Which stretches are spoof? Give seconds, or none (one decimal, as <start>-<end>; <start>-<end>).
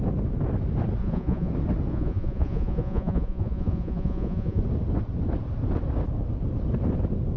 1.0-1.5; 1.9-4.6